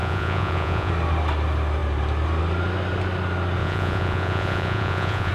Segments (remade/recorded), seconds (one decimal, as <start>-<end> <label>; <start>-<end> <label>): 0.0-0.9 remade; 0.9-3.6 recorded; 3.6-5.3 remade